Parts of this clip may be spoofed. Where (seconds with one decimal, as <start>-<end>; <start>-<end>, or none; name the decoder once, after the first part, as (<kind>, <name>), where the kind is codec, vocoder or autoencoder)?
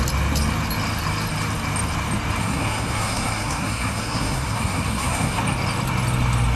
2.4-5.4 (codec, SNAC)